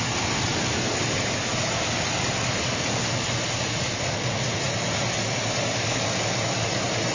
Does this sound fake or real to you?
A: real